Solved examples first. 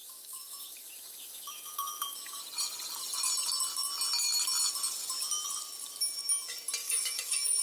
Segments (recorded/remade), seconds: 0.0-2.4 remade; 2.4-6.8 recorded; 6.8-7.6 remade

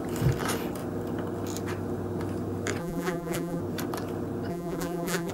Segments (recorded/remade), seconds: 0.0-2.8 recorded; 2.8-3.6 remade; 3.6-4.5 recorded; 4.5-5.3 remade

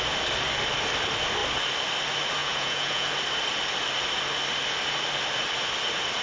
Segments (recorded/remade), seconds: 0.0-2.4 recorded; 2.4-3.1 remade; 3.1-6.2 recorded

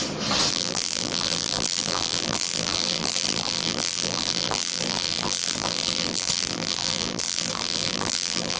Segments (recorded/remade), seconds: 0.0-0.5 recorded; 0.5-8.6 remade